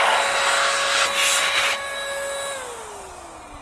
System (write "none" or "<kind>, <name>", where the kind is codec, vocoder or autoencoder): none